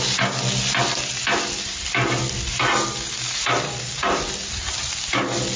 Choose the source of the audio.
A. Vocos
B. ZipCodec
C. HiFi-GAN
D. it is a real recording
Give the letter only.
D